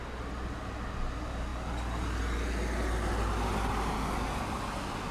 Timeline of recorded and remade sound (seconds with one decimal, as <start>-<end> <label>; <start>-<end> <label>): 0.0-5.1 recorded